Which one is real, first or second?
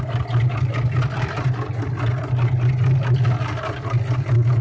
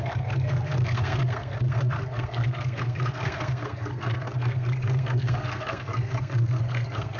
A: first